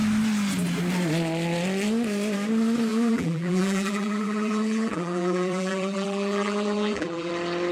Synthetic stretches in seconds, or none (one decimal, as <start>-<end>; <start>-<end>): 2.9-7.3